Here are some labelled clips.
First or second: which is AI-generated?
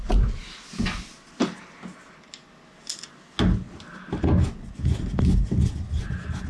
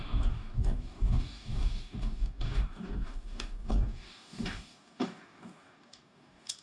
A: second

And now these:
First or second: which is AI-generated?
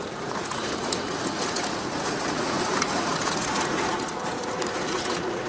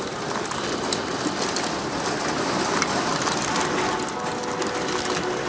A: first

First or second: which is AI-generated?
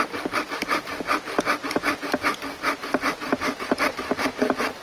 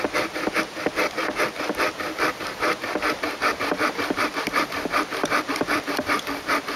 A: second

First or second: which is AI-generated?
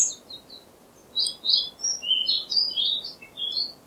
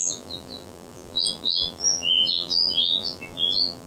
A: second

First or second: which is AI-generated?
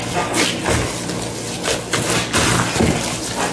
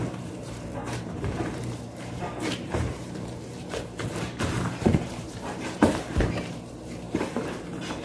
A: second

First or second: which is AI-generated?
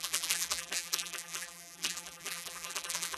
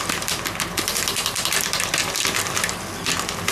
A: first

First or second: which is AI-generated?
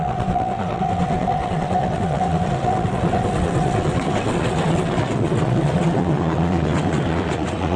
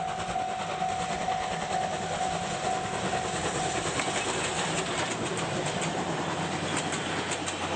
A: first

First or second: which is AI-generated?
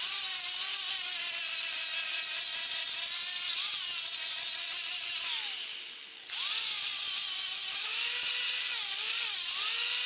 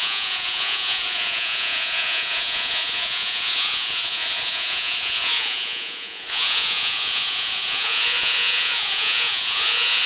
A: second